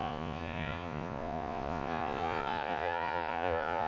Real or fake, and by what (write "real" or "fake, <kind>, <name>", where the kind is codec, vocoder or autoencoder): fake, vocoder, Vocos